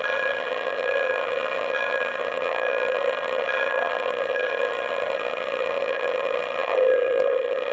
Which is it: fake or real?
fake